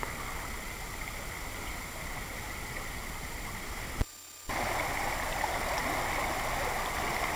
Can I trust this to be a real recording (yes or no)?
yes